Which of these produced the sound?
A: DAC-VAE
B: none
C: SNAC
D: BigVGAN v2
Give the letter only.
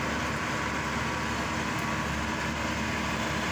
B